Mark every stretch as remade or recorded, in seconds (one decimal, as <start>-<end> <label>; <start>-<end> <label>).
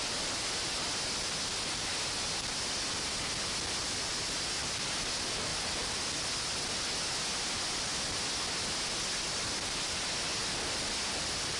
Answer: 0.0-11.6 recorded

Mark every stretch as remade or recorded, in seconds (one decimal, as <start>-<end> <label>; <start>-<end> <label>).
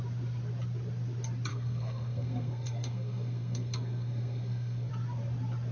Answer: 0.0-1.5 recorded; 1.5-4.9 remade; 4.9-5.7 recorded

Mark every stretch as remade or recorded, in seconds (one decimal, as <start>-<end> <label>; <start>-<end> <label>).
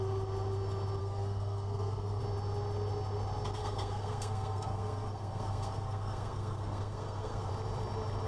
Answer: 0.0-1.0 recorded; 1.0-2.2 remade; 2.2-3.6 recorded; 3.6-7.5 remade; 7.5-8.3 recorded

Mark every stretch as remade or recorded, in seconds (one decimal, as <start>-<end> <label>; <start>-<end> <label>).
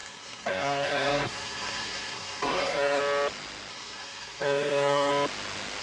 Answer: 0.0-3.0 remade; 3.0-3.7 recorded; 3.7-5.1 remade; 5.1-5.8 recorded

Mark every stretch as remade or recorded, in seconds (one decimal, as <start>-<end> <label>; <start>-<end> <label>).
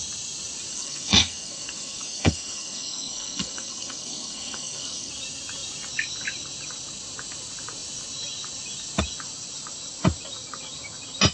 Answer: 0.0-0.7 recorded; 0.7-5.1 remade; 5.1-11.3 recorded